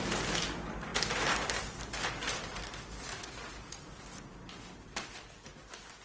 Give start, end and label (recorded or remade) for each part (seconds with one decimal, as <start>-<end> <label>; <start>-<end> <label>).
0.0-6.0 recorded